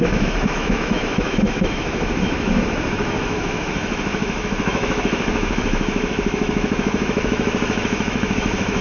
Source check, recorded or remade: remade